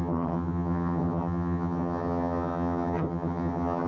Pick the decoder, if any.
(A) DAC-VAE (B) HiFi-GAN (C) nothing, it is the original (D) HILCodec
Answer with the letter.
B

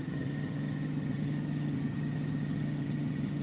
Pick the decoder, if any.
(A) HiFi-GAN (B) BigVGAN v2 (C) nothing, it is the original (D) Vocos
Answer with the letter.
A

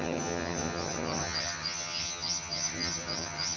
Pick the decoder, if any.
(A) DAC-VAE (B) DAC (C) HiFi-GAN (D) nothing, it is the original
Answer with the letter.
C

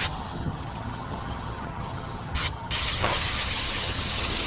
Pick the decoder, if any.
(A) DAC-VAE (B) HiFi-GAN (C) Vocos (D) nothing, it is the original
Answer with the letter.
B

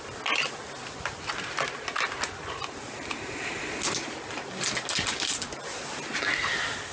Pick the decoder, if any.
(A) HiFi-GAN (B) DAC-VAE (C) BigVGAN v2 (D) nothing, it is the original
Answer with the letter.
D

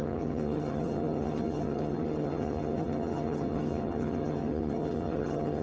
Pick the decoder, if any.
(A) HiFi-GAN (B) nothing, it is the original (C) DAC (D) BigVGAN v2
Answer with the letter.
A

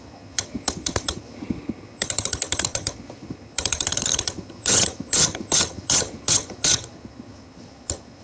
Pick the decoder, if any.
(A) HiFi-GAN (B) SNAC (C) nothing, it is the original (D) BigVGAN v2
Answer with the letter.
A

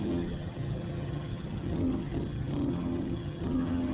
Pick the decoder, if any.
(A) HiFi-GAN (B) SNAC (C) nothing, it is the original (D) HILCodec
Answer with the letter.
A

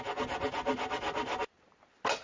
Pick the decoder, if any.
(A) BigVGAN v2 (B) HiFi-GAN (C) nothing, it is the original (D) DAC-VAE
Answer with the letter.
C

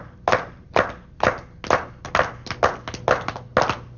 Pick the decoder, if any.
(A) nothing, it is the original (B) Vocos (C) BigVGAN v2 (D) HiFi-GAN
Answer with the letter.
A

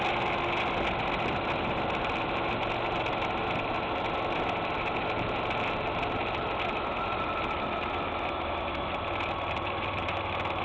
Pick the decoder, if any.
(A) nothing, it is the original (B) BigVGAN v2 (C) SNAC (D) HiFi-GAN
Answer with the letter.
A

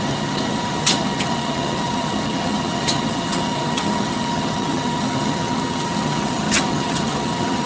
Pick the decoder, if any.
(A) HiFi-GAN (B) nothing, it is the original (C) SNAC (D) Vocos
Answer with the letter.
A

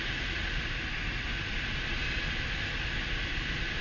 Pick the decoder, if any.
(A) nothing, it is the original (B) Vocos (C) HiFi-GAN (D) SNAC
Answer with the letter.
A